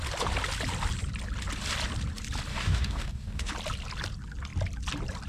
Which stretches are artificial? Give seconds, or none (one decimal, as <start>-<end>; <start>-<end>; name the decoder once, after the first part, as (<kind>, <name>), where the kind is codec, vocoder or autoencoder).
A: 2.5-3.5 (codec, DAC)